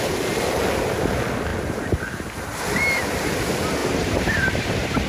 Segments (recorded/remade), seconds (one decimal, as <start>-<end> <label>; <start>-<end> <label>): 0.0-3.8 recorded; 3.8-5.1 remade